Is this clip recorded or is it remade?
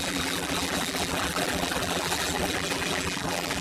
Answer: remade